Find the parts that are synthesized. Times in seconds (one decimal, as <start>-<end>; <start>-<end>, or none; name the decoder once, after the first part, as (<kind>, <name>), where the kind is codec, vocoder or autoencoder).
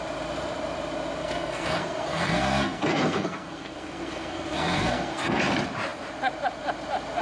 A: 1.2-5.4 (codec, SNAC)